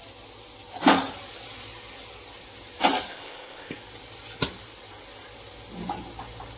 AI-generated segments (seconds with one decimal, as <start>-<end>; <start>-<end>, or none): 3.1-3.7